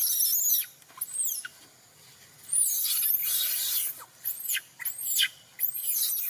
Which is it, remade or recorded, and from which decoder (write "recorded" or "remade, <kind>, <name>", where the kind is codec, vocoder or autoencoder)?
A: recorded